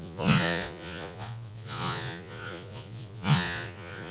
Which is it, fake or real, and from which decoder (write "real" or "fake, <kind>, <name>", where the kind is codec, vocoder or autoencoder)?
fake, vocoder, Vocos